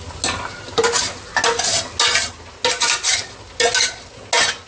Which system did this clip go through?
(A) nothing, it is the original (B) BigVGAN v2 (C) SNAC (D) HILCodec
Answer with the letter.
A